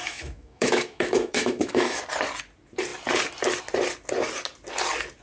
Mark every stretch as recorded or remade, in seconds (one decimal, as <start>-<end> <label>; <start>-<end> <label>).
0.0-2.0 remade; 2.0-5.2 recorded